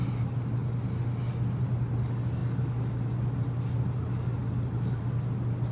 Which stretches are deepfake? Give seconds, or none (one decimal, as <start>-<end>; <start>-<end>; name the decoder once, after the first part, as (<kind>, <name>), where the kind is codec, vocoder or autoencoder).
none